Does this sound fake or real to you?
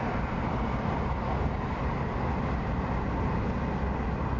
real